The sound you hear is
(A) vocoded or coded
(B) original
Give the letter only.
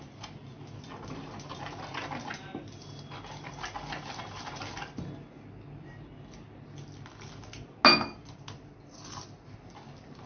B